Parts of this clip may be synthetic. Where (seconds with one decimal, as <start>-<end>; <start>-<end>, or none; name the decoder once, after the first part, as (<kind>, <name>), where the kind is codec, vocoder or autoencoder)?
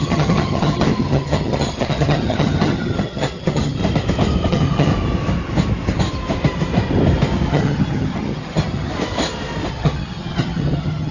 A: 0.0-3.8 (vocoder, HiFi-GAN); 4.5-4.9; 7.5-8.9; 9.7-11.1